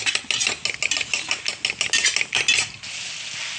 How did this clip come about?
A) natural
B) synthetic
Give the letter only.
A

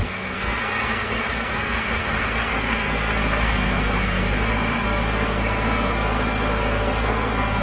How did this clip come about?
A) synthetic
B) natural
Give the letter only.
A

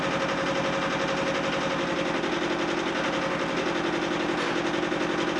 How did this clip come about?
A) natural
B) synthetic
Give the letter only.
A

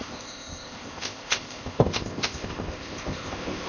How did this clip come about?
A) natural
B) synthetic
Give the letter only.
B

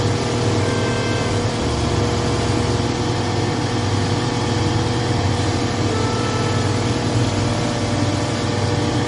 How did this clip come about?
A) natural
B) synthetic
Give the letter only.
A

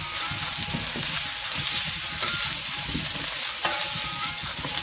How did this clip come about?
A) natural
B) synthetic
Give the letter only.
A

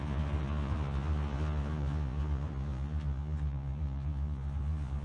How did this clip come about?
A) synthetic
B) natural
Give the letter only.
A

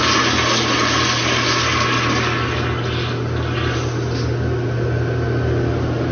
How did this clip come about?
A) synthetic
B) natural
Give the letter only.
B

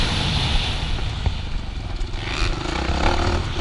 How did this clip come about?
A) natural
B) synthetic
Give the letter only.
A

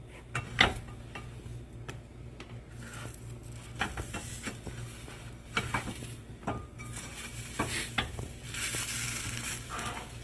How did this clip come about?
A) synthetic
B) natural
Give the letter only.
B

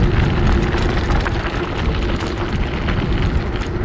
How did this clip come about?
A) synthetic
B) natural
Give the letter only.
B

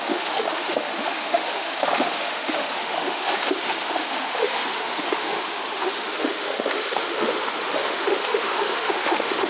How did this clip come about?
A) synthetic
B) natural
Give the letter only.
A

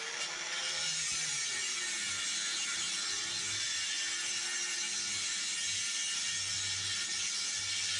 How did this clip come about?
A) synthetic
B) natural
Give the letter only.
B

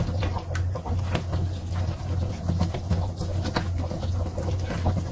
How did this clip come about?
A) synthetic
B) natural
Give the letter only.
B